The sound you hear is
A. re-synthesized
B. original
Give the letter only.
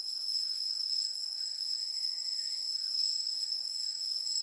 A